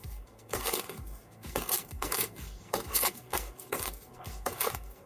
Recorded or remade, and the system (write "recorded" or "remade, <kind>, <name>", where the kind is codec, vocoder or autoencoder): remade, codec, SNAC